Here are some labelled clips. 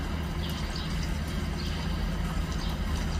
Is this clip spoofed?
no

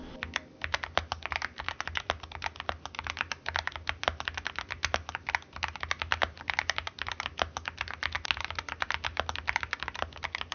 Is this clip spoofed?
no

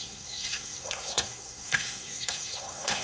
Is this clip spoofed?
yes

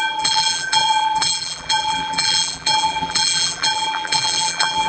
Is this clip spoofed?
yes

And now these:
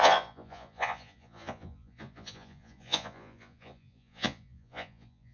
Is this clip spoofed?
yes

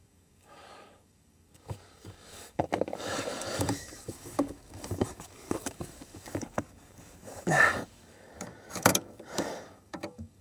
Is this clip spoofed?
yes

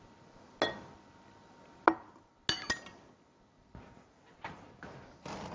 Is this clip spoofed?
no